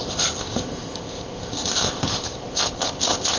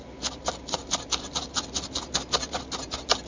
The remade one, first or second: first